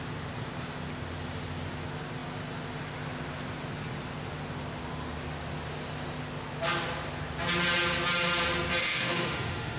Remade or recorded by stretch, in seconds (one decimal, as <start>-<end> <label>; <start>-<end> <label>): 0.0-8.8 recorded; 8.8-9.8 remade